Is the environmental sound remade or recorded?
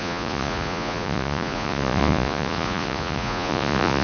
remade